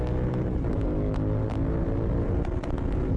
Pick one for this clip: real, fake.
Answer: real